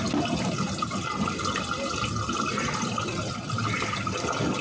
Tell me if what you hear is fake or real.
real